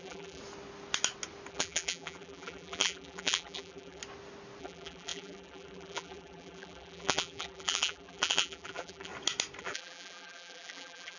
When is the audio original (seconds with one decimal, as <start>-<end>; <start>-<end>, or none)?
0.4-1.5; 4.0-4.6; 9.1-9.6

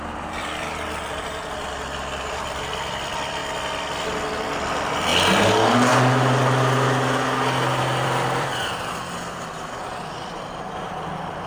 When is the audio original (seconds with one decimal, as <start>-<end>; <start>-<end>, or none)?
3.4-4.4; 5.1-7.8